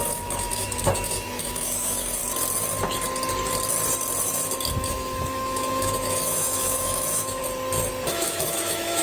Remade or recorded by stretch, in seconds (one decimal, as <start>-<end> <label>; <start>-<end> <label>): 0.0-2.2 remade; 2.2-4.8 recorded; 4.8-7.4 remade; 7.4-8.1 recorded; 8.1-9.0 remade